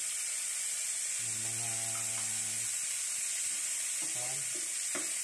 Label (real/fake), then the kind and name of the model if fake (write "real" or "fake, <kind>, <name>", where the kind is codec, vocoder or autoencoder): real